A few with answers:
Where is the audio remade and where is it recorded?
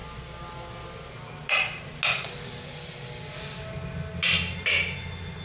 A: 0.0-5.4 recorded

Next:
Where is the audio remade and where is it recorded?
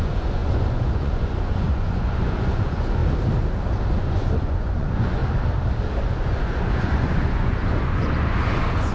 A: 0.0-3.0 remade; 3.0-4.0 recorded; 4.0-5.2 remade; 5.2-6.0 recorded; 6.0-8.9 remade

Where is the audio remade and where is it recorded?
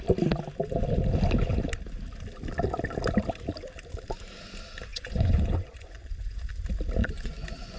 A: 0.0-4.9 recorded; 4.9-6.5 remade; 6.5-7.0 recorded; 7.0-7.8 remade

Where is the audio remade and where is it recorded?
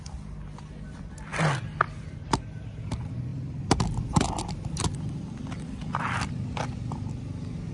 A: 0.0-3.3 recorded; 3.3-6.3 remade; 6.3-7.7 recorded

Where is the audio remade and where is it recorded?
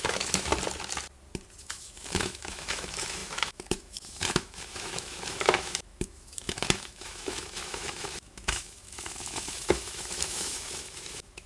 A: 0.0-0.5 remade; 0.5-1.6 recorded; 1.6-11.5 remade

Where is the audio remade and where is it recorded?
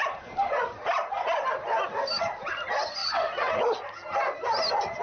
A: 0.0-3.0 recorded; 3.0-3.5 remade; 3.5-5.0 recorded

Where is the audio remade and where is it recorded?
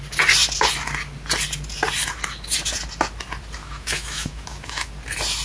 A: 0.0-3.6 recorded; 3.6-4.9 remade; 4.9-5.4 recorded